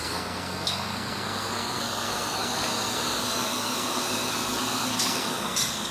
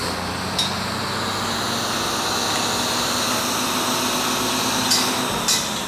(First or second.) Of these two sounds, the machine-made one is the first